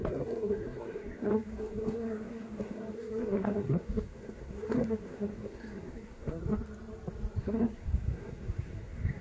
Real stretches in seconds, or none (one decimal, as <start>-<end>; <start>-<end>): 6.4-7.4